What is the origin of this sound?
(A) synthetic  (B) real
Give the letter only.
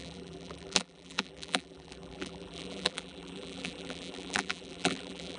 A